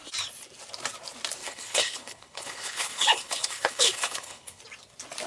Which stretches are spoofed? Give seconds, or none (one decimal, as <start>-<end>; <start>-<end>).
1.4-4.6